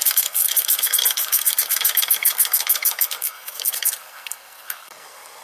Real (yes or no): no